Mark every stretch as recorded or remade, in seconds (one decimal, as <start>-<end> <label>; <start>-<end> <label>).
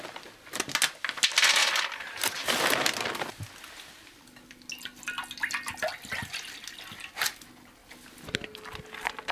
0.0-9.3 recorded